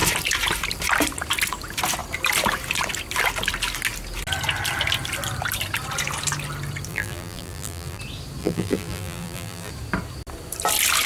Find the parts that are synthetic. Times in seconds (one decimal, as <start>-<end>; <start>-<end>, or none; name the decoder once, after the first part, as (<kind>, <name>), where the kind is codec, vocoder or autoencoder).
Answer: 6.9-8.0 (vocoder, BigVGAN v2); 8.4-9.7